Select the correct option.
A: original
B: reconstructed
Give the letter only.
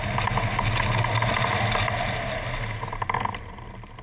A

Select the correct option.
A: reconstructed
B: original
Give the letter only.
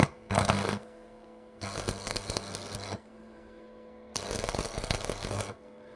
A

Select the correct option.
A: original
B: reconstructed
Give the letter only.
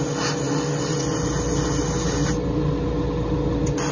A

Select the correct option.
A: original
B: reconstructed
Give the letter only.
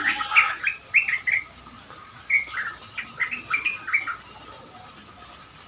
A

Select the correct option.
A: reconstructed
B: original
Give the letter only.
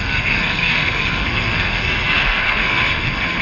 A